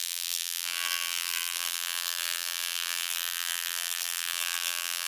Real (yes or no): no